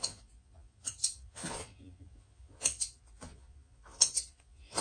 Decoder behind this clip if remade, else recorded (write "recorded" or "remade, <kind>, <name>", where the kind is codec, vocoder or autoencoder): remade, vocoder, Vocos